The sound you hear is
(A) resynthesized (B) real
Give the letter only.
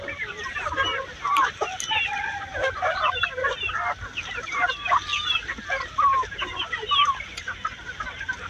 A